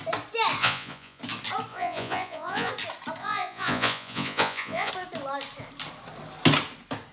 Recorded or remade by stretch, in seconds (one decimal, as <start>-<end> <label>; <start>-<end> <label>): 0.0-0.6 recorded; 0.6-1.2 remade; 1.2-1.7 recorded; 1.7-2.7 remade; 2.7-3.2 recorded; 3.2-4.9 remade; 4.9-7.1 recorded